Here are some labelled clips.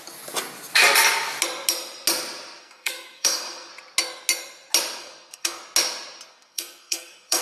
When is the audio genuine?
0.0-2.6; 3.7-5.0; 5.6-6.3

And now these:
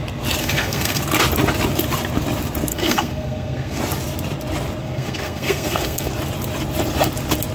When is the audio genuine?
0.0-0.4; 1.0-2.7; 3.8-4.8; 6.1-7.5